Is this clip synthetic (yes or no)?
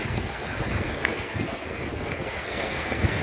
yes